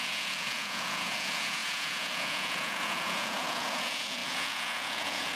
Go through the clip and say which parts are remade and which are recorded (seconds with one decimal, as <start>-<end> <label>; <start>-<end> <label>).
0.0-5.4 remade